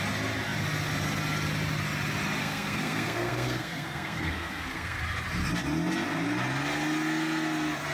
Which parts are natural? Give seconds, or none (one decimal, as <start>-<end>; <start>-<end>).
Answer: 0.0-2.4; 5.0-7.9